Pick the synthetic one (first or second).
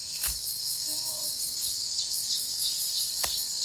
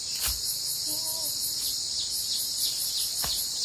first